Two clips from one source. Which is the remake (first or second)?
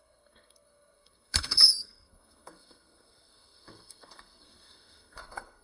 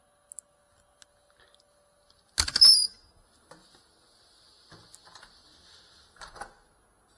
first